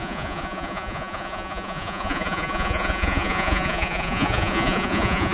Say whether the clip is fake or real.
fake